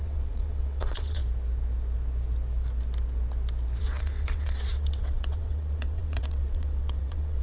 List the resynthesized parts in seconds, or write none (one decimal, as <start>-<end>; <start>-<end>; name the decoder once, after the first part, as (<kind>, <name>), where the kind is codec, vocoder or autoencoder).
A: 0.0-1.2 (vocoder, WaveNeXt); 3.8-7.4